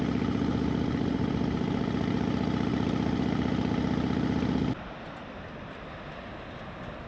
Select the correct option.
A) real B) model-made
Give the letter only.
A